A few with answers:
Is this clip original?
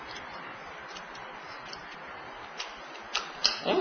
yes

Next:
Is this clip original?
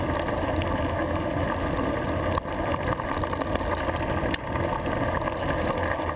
yes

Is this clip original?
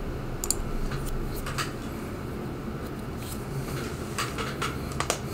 yes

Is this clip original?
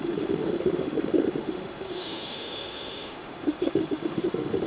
no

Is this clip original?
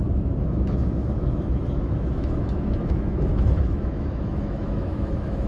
no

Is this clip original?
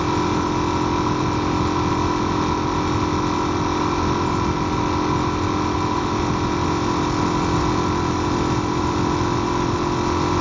yes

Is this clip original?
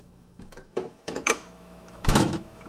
no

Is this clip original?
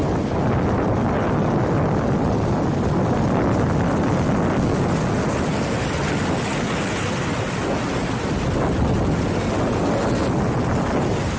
yes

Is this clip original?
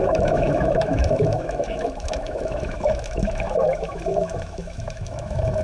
no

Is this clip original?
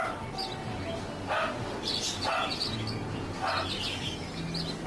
yes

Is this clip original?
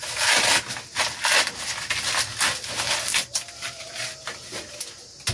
yes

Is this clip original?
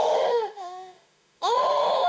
no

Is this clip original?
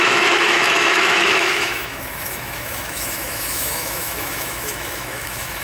no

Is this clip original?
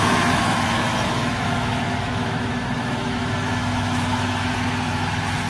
no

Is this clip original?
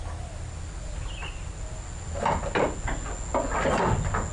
yes